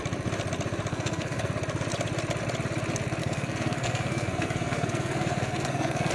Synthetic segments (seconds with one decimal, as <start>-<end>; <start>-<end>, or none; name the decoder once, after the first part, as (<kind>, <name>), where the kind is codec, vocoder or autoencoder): 0.9-1.5 (codec, SNAC); 3.2-6.1